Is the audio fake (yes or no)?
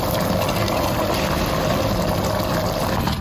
no